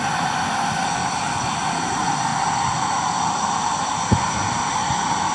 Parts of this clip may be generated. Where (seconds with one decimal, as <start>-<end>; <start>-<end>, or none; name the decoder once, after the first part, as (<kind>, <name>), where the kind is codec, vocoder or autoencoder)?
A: none